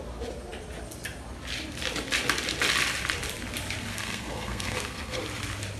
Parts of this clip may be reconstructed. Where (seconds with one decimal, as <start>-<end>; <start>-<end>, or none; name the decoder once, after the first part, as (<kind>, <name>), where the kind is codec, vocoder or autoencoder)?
3.9-5.2 (codec, SNAC)